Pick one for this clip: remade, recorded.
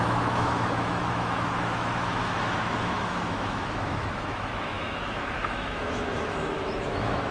remade